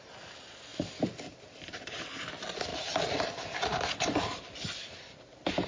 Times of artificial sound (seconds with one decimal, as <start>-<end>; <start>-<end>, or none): 2.7-3.7